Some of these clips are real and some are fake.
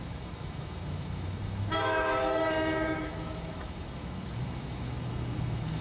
fake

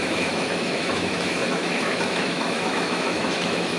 fake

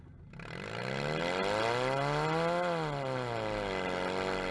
real